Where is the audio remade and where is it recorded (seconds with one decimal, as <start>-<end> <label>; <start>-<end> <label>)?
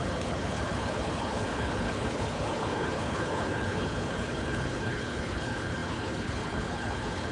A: 0.0-7.3 remade